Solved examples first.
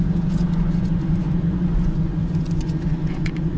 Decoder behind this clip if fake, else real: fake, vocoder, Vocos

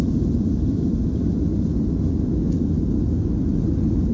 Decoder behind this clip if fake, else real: real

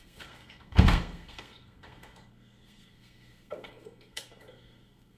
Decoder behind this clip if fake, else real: fake, codec, SNAC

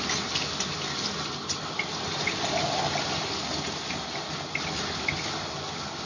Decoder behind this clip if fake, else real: real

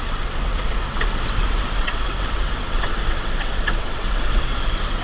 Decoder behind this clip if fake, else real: fake, vocoder, WaveNeXt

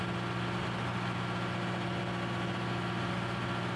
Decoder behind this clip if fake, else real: real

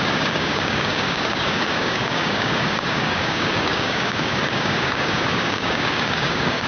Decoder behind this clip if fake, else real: fake, codec, DAC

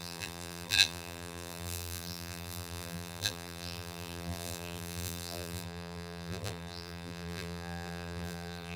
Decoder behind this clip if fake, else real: fake, vocoder, BigVGAN v2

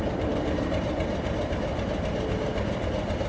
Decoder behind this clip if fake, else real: real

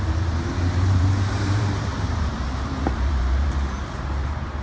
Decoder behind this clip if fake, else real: fake, vocoder, BigVGAN v2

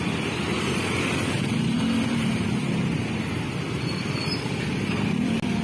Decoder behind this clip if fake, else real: real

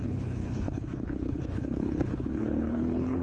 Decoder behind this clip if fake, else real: fake, codec, HILCodec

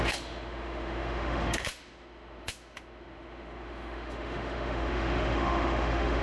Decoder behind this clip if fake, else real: fake, autoencoder, DAC-VAE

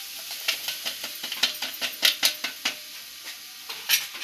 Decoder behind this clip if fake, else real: real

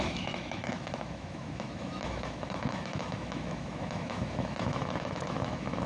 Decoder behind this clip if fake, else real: fake, autoencoder, DAC-VAE